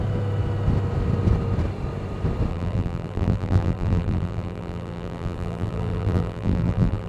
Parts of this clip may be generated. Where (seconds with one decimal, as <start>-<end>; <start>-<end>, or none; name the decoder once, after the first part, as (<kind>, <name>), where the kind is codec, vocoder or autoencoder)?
2.5-7.1 (vocoder, BigVGAN v2)